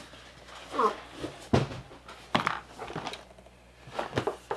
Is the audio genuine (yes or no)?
yes